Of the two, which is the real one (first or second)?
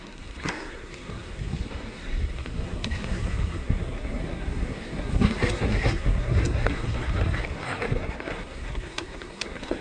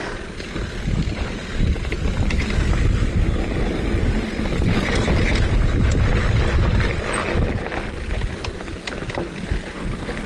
second